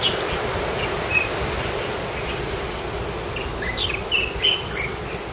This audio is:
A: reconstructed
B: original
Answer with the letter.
B